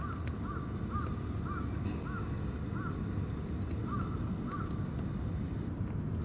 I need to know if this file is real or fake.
real